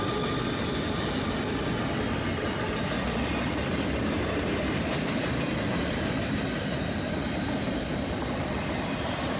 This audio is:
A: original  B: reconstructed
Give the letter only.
A